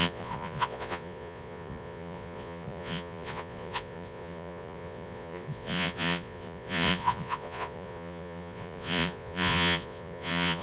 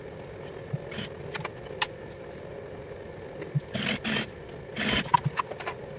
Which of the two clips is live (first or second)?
second